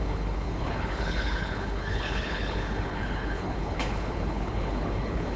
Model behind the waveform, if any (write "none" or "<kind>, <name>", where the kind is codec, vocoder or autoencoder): codec, HILCodec